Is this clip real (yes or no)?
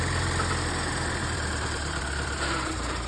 no